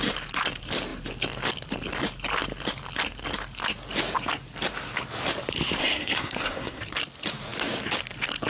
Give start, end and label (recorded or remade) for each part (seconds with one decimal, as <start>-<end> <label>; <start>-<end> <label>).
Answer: 0.0-5.8 recorded; 5.8-6.8 remade; 6.8-8.5 recorded